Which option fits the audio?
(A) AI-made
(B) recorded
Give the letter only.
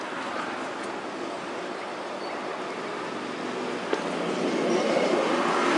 B